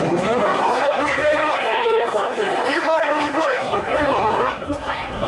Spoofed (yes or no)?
yes